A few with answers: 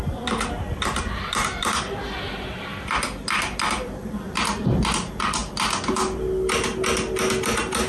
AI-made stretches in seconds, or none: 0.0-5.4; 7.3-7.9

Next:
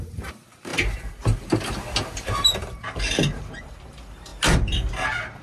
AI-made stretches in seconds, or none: 0.0-0.7; 2.3-4.3

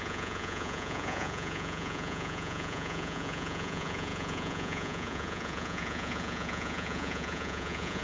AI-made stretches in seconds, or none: 0.0-8.0

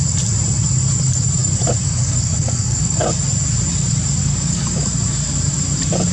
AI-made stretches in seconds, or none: 1.4-3.0; 4.2-4.9